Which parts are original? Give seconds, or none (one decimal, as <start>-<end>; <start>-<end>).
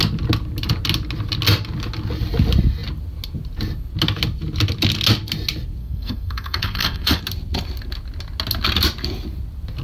0.0-5.8; 7.2-9.8